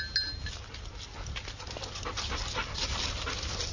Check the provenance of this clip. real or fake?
real